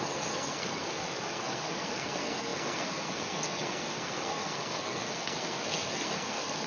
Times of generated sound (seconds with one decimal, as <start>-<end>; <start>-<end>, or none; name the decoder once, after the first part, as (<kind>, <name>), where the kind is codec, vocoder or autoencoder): 0.0-6.7 (codec, SNAC)